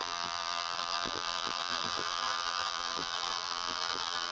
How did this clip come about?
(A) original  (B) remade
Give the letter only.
B